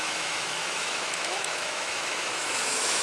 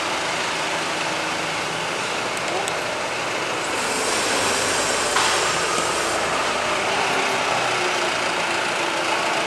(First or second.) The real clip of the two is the second